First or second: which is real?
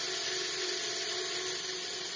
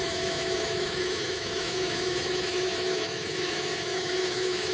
first